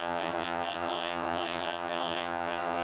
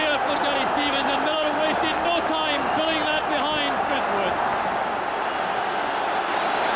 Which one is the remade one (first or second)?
first